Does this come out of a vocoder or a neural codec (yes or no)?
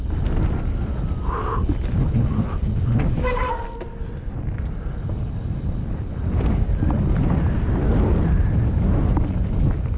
no